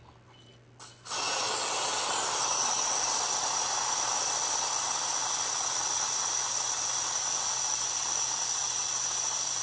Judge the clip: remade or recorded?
recorded